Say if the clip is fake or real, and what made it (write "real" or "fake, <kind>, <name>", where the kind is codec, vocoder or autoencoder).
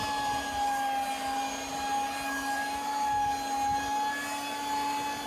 real